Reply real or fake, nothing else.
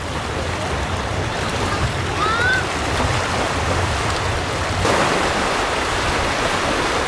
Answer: fake